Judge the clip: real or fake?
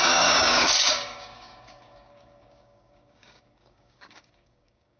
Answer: fake